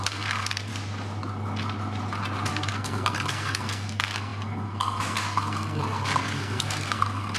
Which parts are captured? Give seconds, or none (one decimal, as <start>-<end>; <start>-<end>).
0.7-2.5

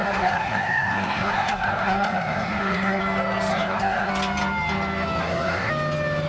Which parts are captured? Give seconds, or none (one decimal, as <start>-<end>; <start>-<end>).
3.0-3.5; 4.1-5.2; 5.7-6.3

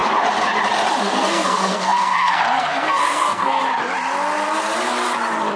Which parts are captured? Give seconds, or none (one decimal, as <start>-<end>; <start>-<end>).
0.0-1.0; 3.6-5.6

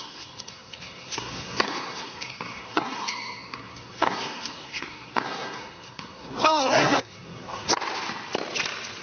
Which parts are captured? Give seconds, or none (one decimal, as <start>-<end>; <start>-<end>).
7.7-9.0